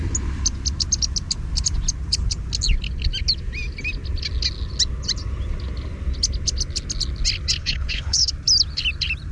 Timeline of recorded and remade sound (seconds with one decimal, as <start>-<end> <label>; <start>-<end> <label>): 0.0-7.6 recorded; 7.6-8.3 remade; 8.3-9.3 recorded